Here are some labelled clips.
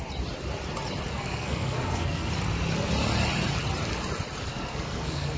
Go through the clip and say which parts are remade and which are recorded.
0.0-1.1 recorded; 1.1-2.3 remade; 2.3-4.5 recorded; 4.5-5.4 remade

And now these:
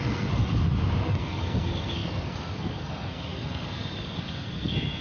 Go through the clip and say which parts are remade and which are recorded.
0.0-0.5 remade; 0.5-1.0 recorded; 1.0-5.0 remade

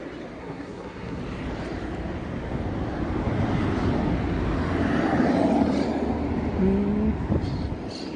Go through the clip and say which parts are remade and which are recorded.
0.0-0.4 recorded; 0.4-1.2 remade; 1.2-8.2 recorded

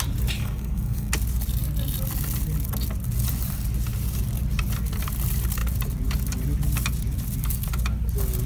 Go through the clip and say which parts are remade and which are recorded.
0.0-0.4 recorded; 0.4-1.1 remade; 1.1-8.5 recorded

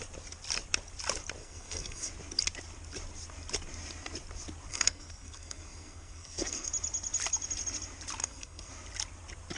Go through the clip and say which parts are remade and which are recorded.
0.0-1.4 recorded; 1.4-2.1 remade; 2.1-4.7 recorded; 4.7-6.7 remade; 6.7-8.2 recorded; 8.2-8.7 remade; 8.7-9.6 recorded

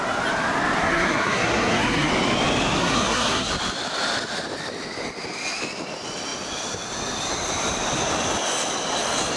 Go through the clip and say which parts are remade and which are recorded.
0.0-0.8 recorded; 0.8-2.1 remade; 2.1-2.8 recorded; 2.8-3.5 remade; 3.5-9.4 recorded